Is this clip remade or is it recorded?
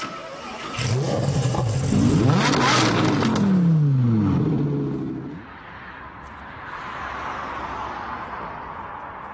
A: recorded